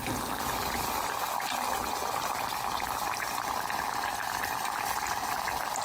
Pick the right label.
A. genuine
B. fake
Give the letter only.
A